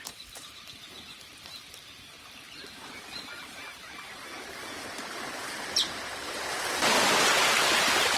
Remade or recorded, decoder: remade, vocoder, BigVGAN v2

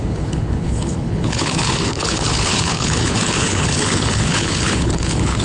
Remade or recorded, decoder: remade, codec, HILCodec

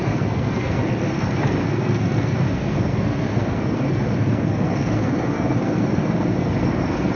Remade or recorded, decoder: remade, codec, SNAC